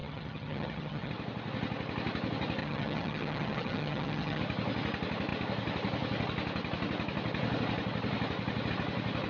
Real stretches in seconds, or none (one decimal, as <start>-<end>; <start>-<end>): 1.1-2.6; 4.4-9.3